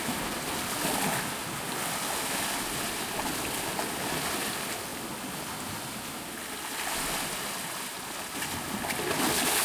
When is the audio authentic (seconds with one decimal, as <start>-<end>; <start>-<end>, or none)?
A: 0.0-9.6